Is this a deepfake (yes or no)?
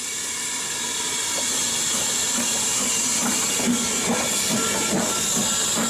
no